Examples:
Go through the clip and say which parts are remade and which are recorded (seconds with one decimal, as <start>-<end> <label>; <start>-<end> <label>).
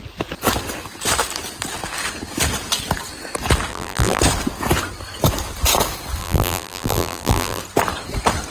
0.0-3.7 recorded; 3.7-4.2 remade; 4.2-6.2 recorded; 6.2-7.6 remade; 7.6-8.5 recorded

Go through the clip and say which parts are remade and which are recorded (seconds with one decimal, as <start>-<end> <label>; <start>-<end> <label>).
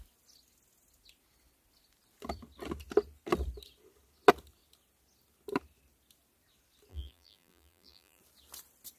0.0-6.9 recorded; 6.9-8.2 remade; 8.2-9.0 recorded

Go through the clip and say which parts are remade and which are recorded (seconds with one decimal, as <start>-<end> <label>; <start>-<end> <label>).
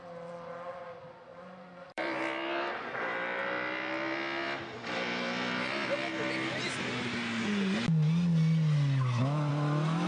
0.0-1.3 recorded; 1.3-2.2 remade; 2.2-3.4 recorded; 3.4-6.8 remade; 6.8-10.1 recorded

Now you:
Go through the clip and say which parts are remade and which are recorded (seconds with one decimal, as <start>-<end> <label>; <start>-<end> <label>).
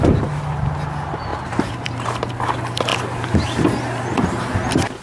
0.0-1.3 recorded; 1.3-2.3 remade; 2.3-5.0 recorded